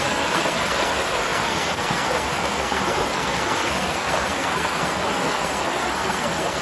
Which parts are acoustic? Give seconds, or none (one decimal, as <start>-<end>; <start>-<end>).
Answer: none